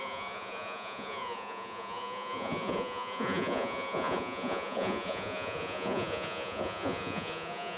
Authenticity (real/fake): fake